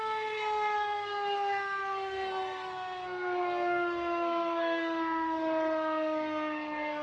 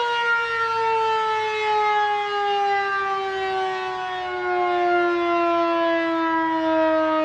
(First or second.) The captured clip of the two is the second